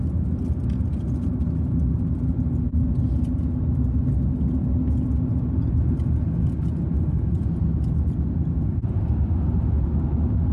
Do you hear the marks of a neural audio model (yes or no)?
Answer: no